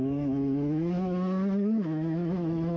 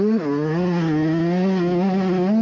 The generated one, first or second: first